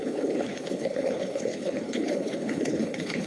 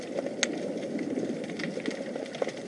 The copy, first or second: first